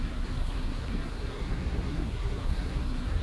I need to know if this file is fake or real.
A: fake